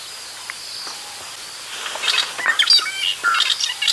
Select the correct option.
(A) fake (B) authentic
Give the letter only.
B